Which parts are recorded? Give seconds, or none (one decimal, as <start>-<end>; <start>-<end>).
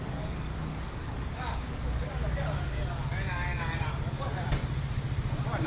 4.6-5.7